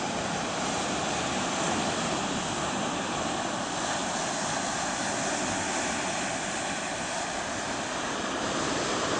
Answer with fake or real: real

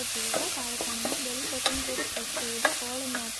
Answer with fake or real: real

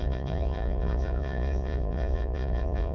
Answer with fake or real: fake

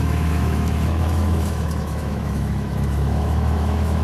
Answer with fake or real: fake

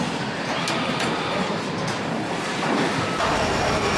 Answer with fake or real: real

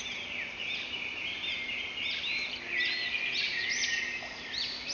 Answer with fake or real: real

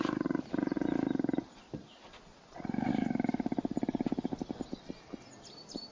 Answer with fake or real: real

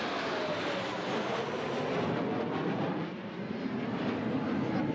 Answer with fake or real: real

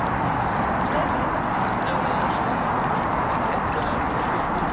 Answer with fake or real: real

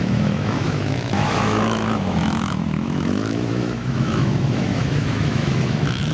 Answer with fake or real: fake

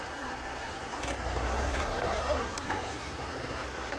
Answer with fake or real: fake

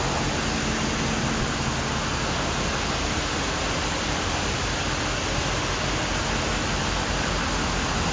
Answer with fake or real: real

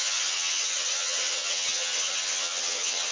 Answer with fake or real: fake